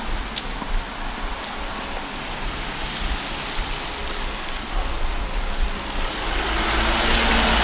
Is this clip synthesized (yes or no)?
no